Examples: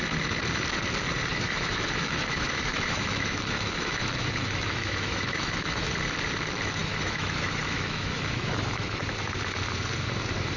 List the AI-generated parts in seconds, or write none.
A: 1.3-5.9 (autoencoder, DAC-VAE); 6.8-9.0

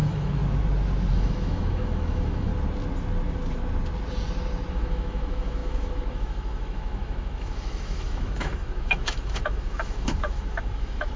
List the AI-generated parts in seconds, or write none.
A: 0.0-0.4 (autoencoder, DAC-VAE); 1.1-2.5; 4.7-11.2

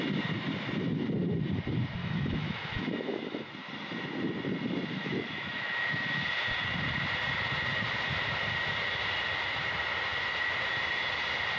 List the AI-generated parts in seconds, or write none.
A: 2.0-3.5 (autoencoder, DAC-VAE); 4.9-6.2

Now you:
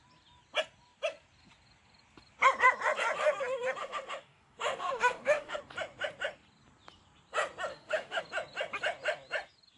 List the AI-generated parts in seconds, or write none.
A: 3.8-5.6 (autoencoder, DAC-VAE); 7.7-8.2

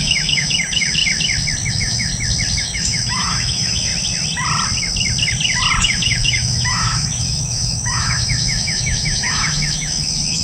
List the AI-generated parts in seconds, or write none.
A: 0.0-1.0 (autoencoder, DAC-VAE); 1.7-2.1; 2.6-3.9; 5.8-10.4